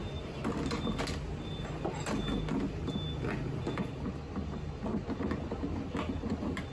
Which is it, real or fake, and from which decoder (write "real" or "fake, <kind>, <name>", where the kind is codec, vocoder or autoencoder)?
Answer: real